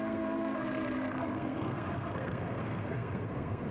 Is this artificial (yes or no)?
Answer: yes